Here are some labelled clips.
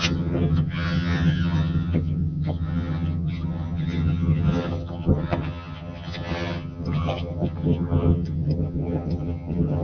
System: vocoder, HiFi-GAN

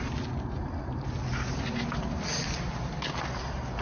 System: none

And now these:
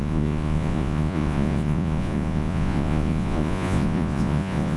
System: vocoder, Vocos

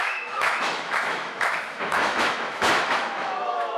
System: autoencoder, DAC-VAE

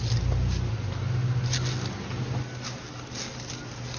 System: none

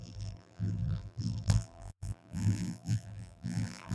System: vocoder, BigVGAN v2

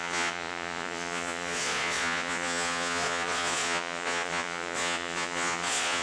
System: vocoder, Vocos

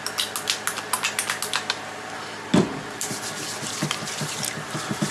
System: none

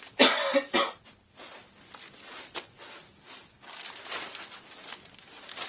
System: none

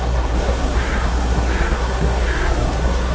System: codec, SNAC